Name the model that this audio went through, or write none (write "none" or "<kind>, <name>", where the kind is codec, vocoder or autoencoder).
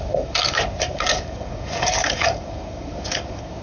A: codec, DAC